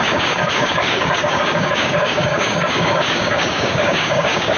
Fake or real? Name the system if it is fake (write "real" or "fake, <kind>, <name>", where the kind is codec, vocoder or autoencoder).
fake, codec, DAC